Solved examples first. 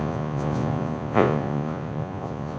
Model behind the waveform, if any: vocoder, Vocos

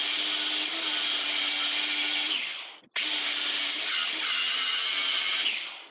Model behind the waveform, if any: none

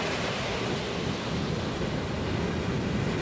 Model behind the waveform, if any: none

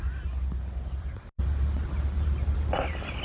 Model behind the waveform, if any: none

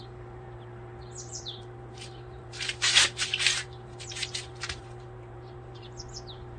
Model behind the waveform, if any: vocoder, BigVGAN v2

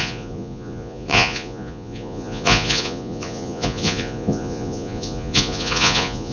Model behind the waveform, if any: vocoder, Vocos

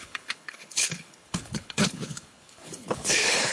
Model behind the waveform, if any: codec, HILCodec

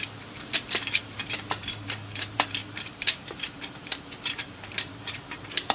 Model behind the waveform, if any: vocoder, BigVGAN v2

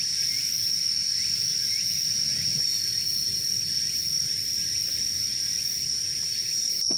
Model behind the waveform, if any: none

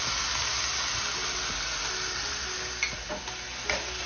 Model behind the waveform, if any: none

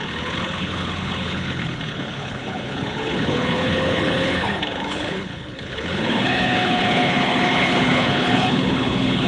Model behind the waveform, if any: codec, HILCodec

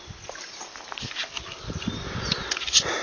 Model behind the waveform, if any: none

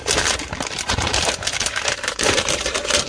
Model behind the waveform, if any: vocoder, BigVGAN v2